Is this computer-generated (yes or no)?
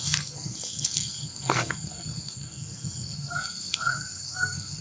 yes